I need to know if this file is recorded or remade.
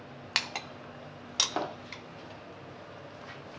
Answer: recorded